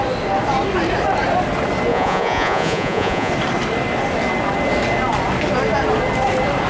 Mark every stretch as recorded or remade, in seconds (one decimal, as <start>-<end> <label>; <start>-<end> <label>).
0.0-1.9 recorded; 1.9-3.3 remade; 3.3-6.7 recorded

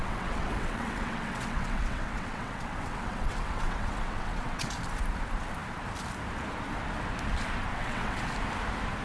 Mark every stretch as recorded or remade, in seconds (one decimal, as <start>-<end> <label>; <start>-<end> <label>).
0.0-4.7 remade; 4.7-7.7 recorded; 7.7-8.3 remade; 8.3-9.0 recorded

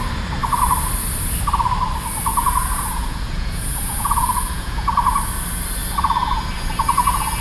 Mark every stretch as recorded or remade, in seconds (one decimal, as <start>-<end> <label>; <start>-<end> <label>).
0.0-2.3 recorded; 2.3-5.2 remade; 5.2-7.4 recorded

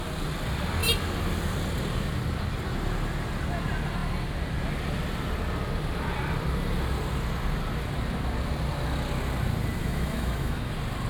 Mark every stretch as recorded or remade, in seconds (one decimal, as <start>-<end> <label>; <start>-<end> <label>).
0.0-9.8 recorded; 9.8-10.7 remade; 10.7-11.1 recorded

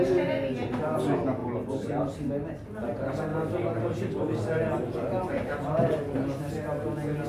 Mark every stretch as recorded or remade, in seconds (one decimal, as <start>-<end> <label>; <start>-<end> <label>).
0.0-1.4 recorded; 1.4-2.3 remade; 2.3-4.8 recorded; 4.8-6.0 remade; 6.0-7.3 recorded